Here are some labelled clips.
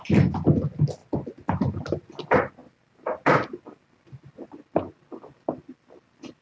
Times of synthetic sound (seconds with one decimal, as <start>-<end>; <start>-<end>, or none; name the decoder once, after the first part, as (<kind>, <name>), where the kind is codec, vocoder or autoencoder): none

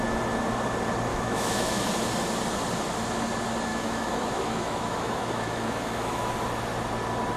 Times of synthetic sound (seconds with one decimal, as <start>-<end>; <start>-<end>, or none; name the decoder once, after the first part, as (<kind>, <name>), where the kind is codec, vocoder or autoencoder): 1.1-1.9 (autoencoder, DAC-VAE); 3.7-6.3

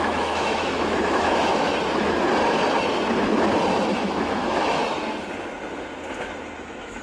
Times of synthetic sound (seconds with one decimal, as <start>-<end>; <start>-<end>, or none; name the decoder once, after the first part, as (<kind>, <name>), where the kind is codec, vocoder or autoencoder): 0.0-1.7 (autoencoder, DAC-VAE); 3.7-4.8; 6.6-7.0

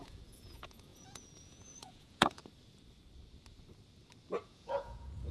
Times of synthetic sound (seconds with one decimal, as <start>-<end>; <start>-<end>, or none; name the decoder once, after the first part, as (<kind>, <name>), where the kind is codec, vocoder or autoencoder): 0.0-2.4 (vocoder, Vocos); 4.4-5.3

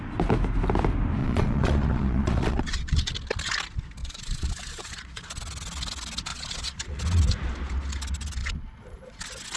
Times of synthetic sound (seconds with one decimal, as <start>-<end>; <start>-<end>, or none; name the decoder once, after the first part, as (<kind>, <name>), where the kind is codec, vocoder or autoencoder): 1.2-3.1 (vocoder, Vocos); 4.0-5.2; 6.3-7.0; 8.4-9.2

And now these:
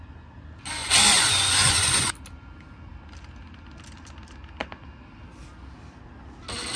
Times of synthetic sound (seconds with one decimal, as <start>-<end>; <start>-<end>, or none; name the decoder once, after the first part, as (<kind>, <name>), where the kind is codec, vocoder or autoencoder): 0.8-2.1 (vocoder, Vocos)

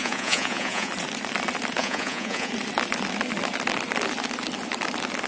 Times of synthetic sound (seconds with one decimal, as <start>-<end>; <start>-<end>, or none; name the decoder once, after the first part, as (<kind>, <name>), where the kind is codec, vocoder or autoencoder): 0.0-0.9 (vocoder, Vocos); 1.8-2.5

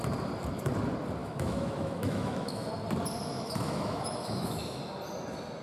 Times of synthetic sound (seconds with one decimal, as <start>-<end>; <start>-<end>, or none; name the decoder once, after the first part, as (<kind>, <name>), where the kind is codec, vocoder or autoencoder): 1.2-2.7 (autoencoder, DAC-VAE); 3.3-4.8